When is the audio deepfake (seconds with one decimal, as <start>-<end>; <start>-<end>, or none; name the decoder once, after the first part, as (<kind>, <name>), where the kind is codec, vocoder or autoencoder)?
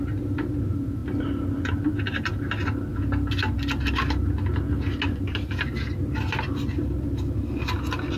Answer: none